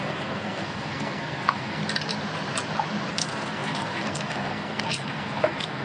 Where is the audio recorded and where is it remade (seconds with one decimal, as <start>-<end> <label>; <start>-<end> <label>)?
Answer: 0.0-1.8 remade; 1.8-3.1 recorded; 3.1-5.8 remade